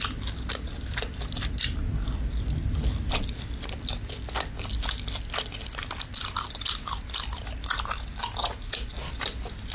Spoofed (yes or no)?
no